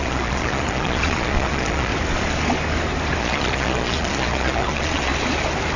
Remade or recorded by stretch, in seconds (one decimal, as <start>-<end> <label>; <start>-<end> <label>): 0.0-1.9 remade; 1.9-3.2 recorded; 3.2-5.1 remade; 5.1-5.8 recorded